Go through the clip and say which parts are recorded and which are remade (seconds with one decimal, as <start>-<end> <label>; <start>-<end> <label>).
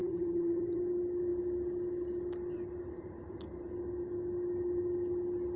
0.0-0.8 remade; 0.8-5.6 recorded